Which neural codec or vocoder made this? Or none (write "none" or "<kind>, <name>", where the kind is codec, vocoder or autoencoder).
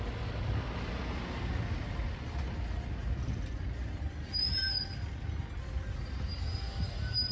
none